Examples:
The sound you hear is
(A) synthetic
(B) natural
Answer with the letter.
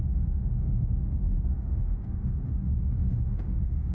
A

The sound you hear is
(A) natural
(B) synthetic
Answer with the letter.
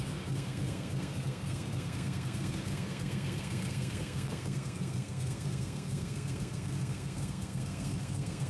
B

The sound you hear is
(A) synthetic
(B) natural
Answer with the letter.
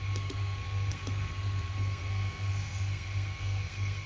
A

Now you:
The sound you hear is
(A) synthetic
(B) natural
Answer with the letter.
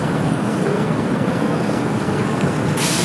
A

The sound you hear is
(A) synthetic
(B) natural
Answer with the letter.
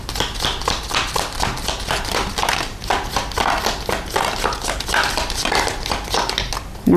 B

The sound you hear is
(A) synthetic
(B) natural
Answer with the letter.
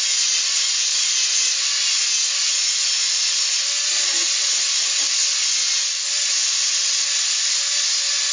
B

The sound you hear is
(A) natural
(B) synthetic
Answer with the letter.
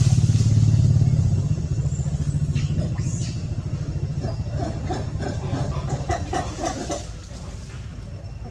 A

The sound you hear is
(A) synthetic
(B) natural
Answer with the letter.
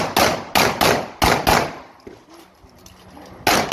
B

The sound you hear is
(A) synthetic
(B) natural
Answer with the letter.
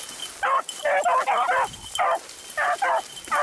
B